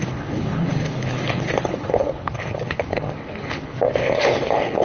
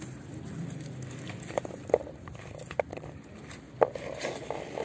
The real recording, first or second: second